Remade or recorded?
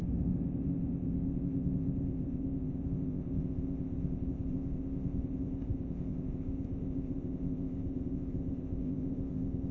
remade